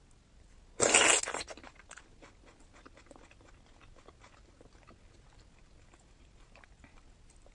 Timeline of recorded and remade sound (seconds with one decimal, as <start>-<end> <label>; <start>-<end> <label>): 0.0-7.5 recorded